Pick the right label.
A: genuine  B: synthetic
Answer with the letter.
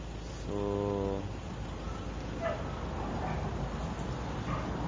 A